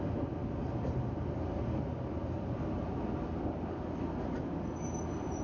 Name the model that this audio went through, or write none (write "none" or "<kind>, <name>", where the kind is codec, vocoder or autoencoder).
none